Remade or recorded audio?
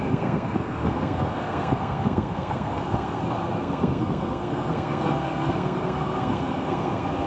remade